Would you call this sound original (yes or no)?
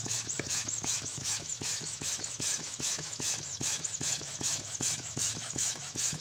no